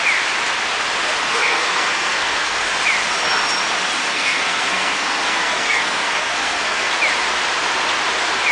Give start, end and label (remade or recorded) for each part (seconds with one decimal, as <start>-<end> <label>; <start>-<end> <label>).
0.0-1.2 recorded; 1.2-2.7 remade; 2.7-4.0 recorded; 4.0-6.9 remade; 6.9-8.5 recorded